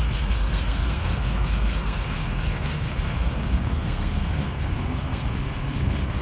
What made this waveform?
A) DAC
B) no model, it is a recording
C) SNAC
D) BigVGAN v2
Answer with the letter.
C